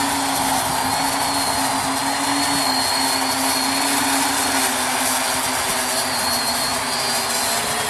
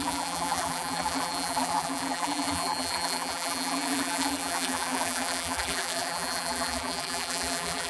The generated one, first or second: second